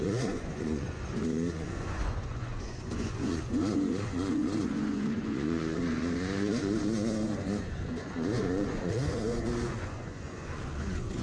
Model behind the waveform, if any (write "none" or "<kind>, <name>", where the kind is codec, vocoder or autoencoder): vocoder, Vocos